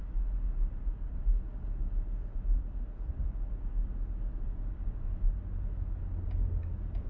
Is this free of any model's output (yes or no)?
yes